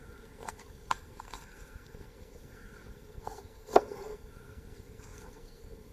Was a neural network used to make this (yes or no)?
yes